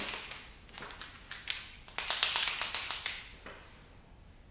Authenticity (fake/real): real